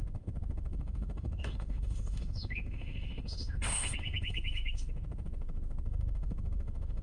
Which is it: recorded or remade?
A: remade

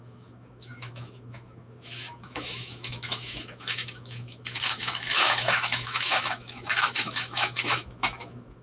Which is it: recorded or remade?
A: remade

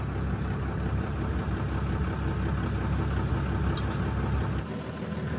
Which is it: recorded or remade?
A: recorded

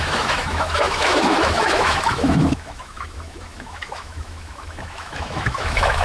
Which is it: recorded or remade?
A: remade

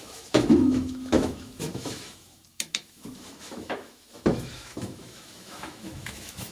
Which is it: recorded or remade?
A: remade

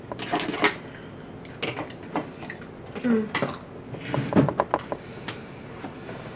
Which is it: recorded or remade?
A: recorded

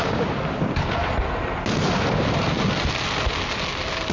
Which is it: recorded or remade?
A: recorded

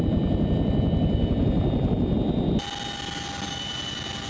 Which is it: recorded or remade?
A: recorded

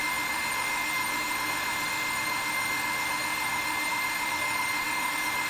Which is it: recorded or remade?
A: remade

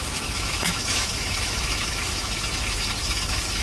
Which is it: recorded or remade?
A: remade